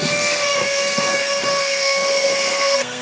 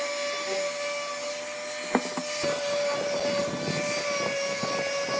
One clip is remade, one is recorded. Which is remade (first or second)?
first